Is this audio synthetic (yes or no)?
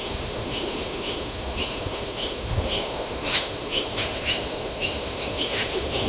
yes